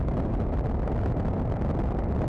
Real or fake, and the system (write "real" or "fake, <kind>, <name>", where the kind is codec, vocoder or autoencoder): real